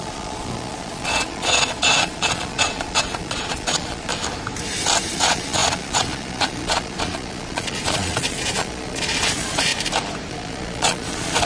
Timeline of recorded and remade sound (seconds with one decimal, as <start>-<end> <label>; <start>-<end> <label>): 0.0-4.1 remade; 4.1-5.1 recorded; 5.1-9.7 remade; 9.7-10.3 recorded; 10.3-11.4 remade